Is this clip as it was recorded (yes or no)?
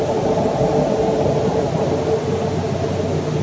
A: yes